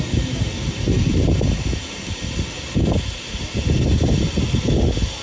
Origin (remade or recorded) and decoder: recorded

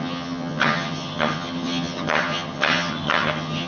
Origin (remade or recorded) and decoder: remade, vocoder, HiFi-GAN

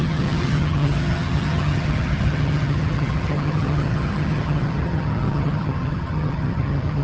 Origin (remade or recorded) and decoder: remade, vocoder, HiFi-GAN